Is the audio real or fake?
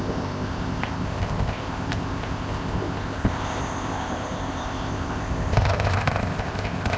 fake